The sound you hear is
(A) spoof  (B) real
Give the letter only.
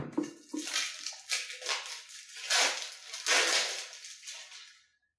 B